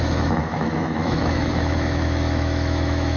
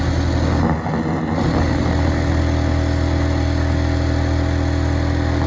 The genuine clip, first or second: second